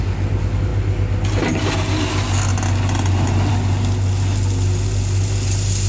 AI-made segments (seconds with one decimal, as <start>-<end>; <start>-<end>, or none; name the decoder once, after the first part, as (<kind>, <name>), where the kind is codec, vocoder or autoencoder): none